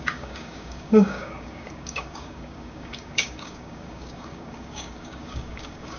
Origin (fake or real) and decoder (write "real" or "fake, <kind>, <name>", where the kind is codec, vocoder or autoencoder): fake, codec, DAC